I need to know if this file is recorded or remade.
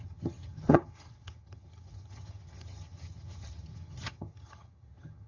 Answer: remade